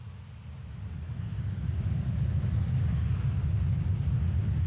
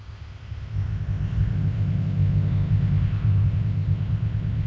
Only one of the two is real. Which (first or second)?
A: first